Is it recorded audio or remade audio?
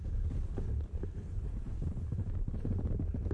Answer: recorded